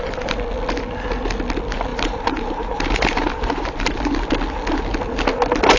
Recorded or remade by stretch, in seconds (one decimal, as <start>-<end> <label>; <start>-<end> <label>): 0.0-1.9 recorded; 1.9-4.1 remade; 4.1-5.8 recorded

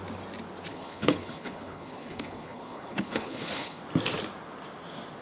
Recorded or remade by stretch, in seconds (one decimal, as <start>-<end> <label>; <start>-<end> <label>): 0.0-0.7 recorded; 0.7-3.8 remade; 3.8-5.2 recorded

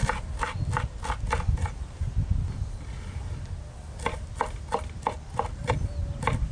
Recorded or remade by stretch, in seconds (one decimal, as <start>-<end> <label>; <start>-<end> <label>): 0.0-6.5 recorded